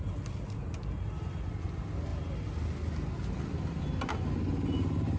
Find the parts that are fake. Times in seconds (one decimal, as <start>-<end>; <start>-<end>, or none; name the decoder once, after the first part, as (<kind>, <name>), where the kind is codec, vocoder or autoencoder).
none

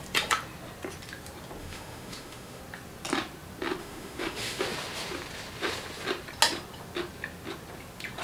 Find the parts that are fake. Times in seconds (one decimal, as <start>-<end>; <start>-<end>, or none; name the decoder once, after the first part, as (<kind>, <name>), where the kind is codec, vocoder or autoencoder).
1.6-2.6 (autoencoder, DAC-VAE); 3.8-4.6

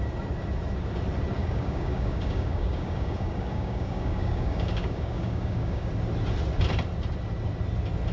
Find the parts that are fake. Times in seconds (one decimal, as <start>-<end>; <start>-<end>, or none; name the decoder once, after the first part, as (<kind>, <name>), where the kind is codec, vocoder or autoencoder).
1.4-5.9 (codec, DAC)

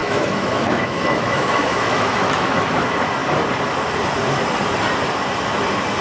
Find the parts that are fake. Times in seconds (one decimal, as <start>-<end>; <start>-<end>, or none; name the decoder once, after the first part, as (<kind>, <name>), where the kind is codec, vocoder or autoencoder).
0.0-2.8 (autoencoder, DAC-VAE)

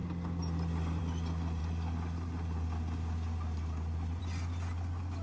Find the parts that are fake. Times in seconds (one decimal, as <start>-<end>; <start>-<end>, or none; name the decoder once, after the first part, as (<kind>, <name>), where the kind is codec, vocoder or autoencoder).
none

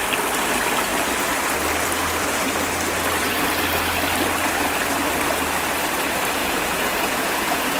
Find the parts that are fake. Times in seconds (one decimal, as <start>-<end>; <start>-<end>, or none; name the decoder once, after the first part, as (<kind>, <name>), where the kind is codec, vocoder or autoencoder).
6.4-7.8 (vocoder, Vocos)